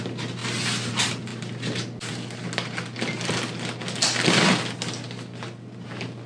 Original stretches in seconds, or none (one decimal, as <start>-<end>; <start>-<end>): 0.0-6.3